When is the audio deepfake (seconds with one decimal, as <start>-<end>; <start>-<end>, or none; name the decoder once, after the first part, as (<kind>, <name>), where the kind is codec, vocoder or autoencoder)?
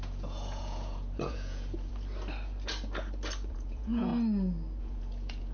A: 0.0-1.9 (vocoder, Vocos); 3.5-4.1; 4.8-5.5